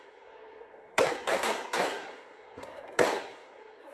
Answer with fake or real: fake